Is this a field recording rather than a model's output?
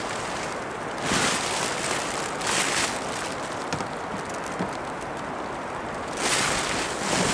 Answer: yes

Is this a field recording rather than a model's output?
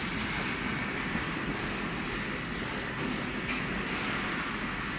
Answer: yes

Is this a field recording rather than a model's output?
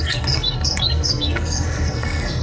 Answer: no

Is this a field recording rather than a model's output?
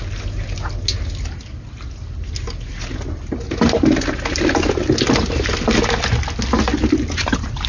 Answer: yes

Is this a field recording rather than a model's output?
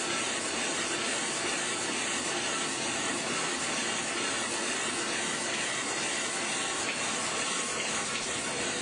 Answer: yes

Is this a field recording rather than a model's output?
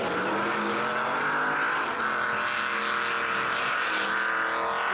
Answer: yes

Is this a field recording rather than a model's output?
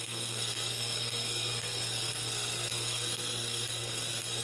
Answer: no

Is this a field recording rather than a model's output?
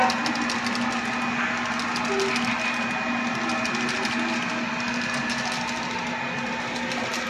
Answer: yes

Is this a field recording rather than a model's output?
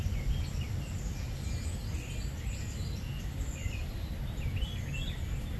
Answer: yes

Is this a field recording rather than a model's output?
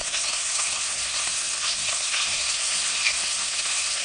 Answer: no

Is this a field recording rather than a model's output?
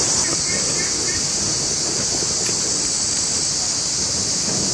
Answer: yes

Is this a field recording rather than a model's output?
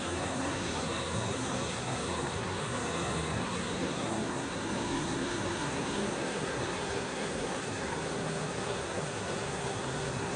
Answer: no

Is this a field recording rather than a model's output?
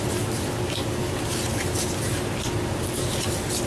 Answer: yes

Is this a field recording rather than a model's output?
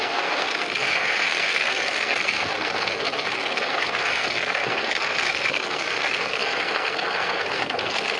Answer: no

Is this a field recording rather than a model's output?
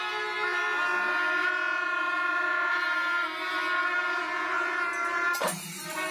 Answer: yes